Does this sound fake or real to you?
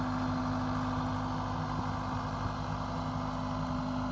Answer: real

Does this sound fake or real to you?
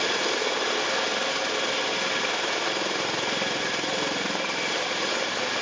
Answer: real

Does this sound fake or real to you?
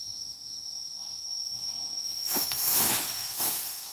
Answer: fake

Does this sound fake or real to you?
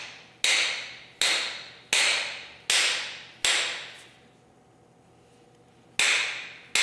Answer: real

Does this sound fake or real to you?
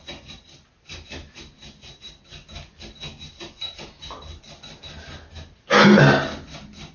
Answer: real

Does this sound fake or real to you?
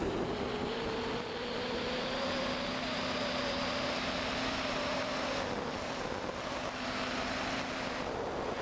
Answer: real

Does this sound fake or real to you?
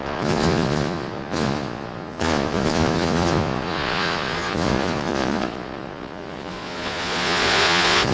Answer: fake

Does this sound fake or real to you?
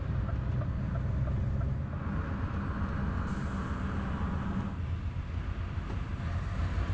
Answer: real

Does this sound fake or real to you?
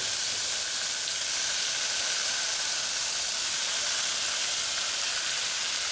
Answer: real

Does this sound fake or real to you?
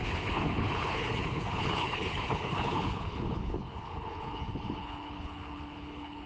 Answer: fake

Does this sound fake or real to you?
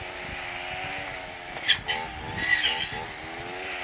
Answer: real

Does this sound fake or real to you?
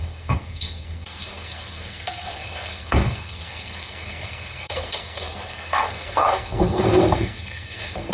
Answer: fake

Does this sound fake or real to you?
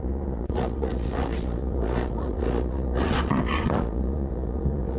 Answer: fake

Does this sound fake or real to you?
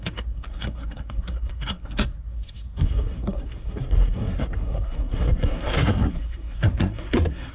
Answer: fake